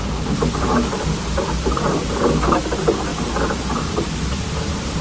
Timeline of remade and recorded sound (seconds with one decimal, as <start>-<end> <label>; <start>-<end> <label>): 0.0-5.0 recorded